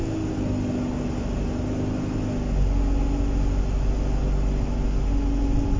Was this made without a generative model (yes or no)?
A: yes